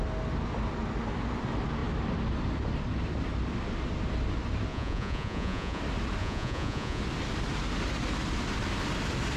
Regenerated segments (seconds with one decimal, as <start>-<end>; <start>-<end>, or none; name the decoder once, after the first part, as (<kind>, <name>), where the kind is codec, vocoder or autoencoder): 4.7-5.8 (vocoder, Vocos); 6.2-7.0